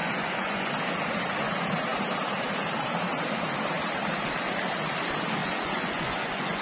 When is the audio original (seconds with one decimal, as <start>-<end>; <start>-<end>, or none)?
0.7-5.4

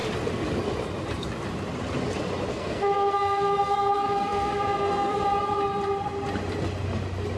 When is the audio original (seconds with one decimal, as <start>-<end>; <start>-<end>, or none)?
0.0-2.5; 5.2-7.4

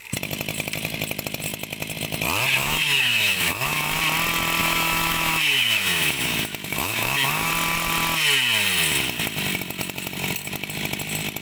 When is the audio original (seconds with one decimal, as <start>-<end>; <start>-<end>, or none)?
0.0-2.6; 4.0-4.6; 7.5-11.4